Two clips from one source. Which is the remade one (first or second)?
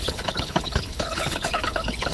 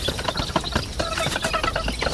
first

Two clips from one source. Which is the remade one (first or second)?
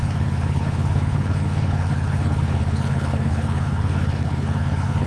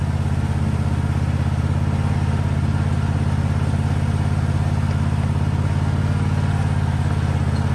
first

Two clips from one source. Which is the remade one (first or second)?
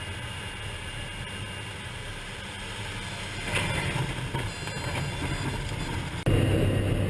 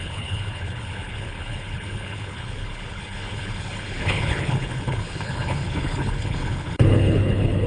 second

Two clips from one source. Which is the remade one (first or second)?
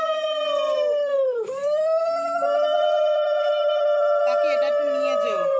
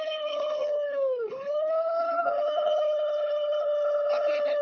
second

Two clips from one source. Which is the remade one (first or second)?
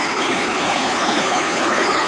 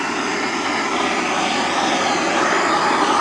first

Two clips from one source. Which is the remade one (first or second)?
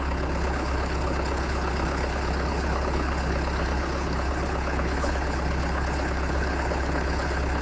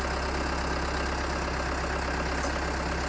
first